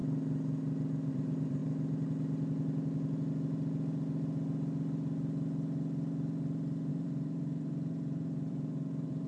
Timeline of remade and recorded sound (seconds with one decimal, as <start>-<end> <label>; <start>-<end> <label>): 0.0-1.1 recorded; 1.1-1.6 remade; 1.6-6.9 recorded; 6.9-9.3 remade